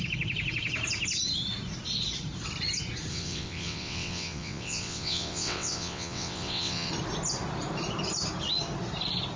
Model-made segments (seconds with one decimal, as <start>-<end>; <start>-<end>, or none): 3.1-6.9